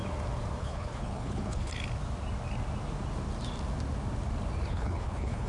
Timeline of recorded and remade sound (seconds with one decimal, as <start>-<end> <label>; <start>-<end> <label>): 0.0-0.6 recorded; 0.6-1.7 remade; 1.7-4.7 recorded; 4.7-5.5 remade